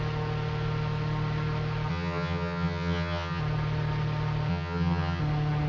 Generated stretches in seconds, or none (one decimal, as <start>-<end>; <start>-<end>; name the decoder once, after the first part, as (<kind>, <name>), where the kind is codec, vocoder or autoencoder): 1.9-3.4 (vocoder, HiFi-GAN); 4.5-5.2